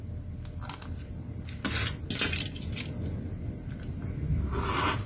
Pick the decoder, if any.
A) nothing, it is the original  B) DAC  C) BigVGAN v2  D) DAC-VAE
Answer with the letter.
A